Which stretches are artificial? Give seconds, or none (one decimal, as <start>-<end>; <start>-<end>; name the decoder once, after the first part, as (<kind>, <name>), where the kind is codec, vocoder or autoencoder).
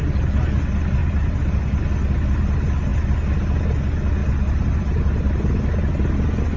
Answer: 1.0-1.8 (vocoder, BigVGAN v2); 4.2-5.9